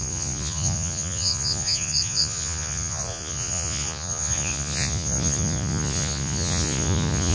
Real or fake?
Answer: fake